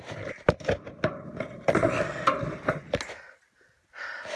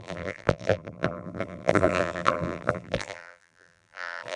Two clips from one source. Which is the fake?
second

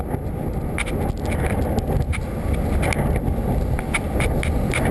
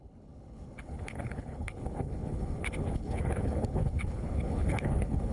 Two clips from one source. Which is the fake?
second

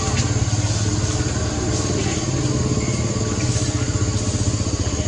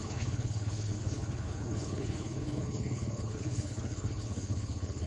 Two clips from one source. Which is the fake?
second